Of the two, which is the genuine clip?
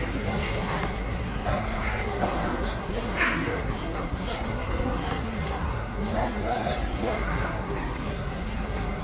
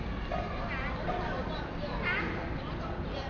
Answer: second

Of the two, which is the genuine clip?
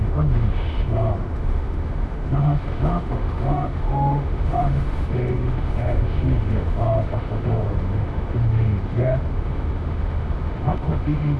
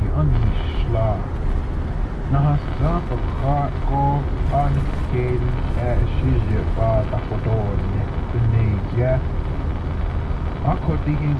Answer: second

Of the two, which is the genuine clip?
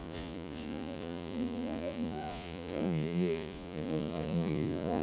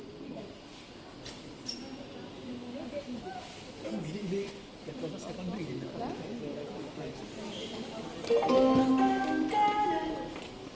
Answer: second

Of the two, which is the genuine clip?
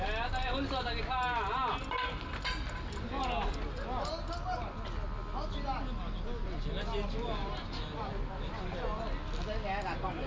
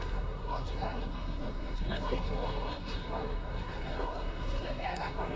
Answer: first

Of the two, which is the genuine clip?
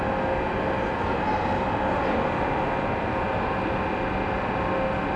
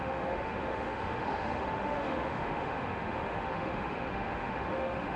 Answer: first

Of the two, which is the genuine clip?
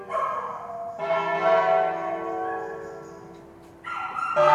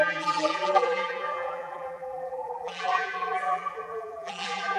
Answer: first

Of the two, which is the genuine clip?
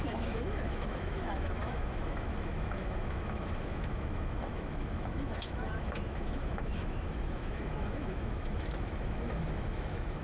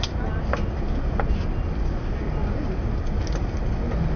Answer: second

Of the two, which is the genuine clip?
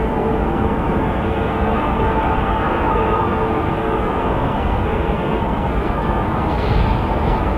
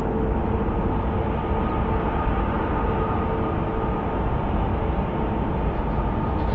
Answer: second